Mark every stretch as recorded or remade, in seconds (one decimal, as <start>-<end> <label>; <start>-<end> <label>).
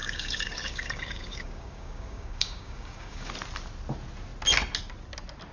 0.0-3.3 remade; 3.3-5.5 recorded